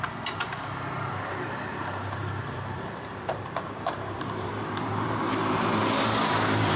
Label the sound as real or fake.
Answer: fake